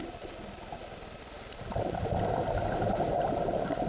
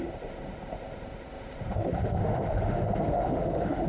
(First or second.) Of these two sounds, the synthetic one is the second